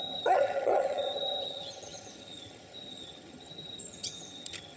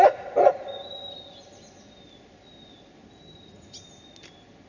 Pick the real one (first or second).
second